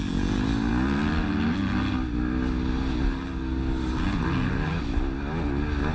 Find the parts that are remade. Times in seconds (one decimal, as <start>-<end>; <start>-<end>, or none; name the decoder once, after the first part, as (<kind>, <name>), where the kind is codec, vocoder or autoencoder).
none